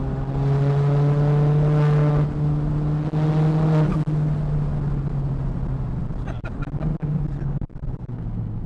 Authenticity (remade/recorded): recorded